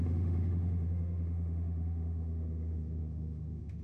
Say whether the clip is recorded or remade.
remade